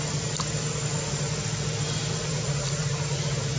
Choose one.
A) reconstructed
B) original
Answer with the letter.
B